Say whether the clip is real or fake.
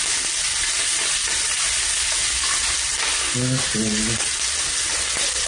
real